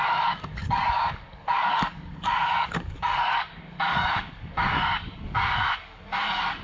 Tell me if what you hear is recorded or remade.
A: remade